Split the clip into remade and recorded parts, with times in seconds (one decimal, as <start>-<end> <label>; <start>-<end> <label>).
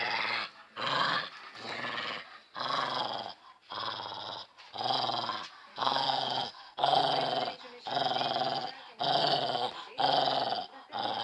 0.0-5.7 recorded; 5.7-7.0 remade; 7.0-11.2 recorded